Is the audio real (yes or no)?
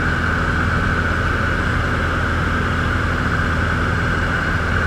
yes